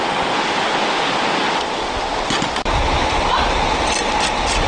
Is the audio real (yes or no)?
yes